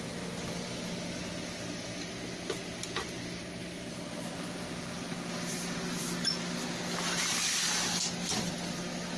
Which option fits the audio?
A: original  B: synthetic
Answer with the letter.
A